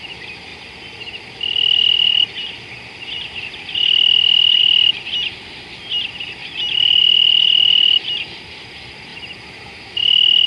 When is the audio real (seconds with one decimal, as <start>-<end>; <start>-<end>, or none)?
0.5-4.6